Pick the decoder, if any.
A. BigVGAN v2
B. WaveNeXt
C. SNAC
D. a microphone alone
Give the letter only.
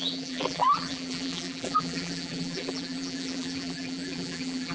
A